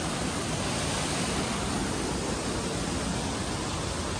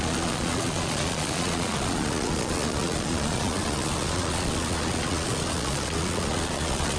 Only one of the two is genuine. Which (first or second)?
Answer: first